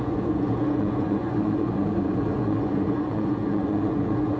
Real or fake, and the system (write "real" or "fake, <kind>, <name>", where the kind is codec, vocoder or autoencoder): fake, vocoder, Vocos